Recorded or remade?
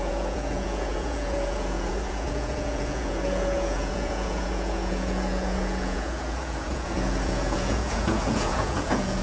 remade